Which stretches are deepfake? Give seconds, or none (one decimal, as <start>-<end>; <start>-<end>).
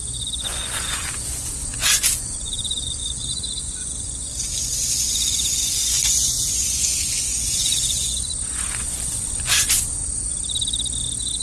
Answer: 0.0-10.4